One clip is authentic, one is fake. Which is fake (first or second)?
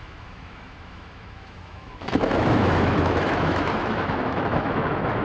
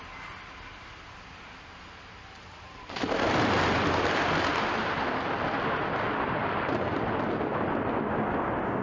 first